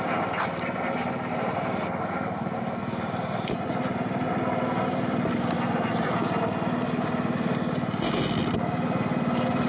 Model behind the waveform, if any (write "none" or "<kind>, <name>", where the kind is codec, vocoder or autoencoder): none